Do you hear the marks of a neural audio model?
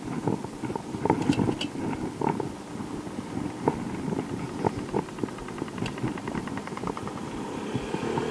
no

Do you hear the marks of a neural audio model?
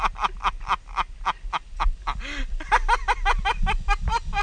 no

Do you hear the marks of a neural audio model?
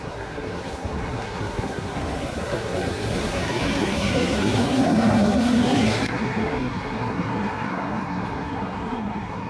yes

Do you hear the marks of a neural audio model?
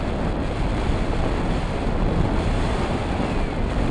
no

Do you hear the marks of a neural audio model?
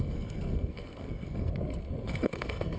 yes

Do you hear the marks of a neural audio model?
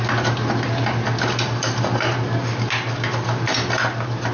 no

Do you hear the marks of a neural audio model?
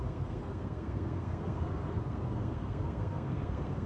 yes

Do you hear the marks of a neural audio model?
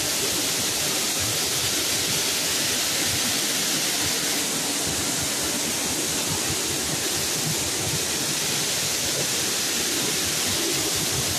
no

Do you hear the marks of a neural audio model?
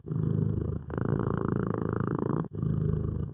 yes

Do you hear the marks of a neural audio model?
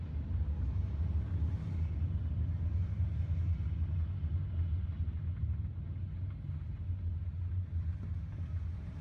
no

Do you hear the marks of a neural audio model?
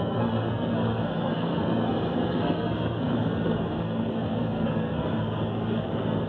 yes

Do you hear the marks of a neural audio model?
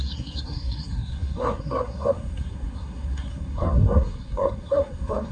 yes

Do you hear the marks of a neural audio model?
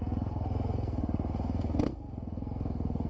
yes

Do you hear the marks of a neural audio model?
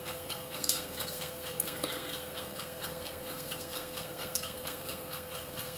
yes